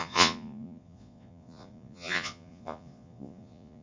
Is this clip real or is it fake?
fake